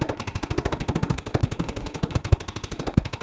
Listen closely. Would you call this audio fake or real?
fake